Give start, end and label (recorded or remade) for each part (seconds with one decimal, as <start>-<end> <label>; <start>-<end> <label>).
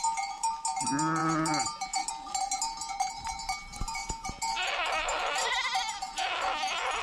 0.0-7.0 recorded